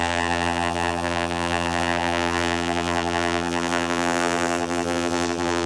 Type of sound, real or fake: fake